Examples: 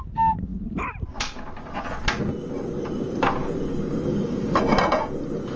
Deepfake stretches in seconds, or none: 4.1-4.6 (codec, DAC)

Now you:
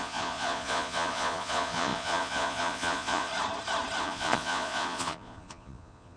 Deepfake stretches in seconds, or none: 0.0-3.3 (vocoder, Vocos); 4.0-6.2

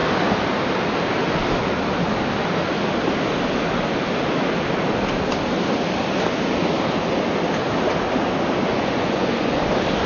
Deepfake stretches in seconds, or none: 8.7-9.6 (vocoder, Vocos)